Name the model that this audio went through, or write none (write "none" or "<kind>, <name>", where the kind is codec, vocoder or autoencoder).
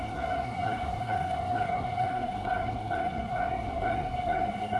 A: codec, SNAC